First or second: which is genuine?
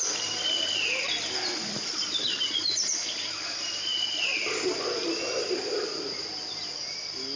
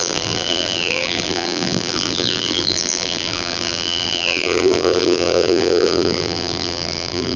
first